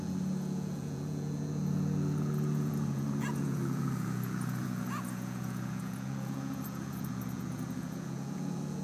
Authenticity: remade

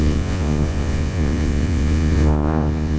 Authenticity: remade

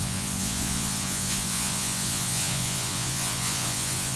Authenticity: remade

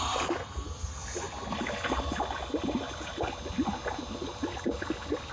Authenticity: recorded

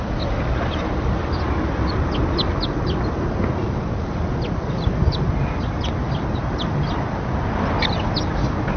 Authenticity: recorded